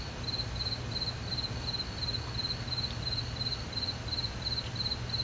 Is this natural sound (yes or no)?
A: yes